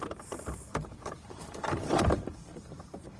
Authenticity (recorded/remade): remade